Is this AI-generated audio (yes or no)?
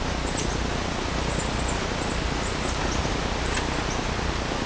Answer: no